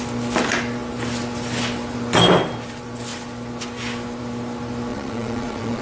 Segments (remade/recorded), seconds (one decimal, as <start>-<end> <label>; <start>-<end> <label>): 0.0-4.9 recorded; 4.9-5.8 remade

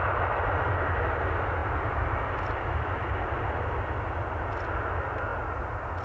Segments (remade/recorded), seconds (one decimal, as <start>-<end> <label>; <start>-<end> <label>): 0.0-6.0 recorded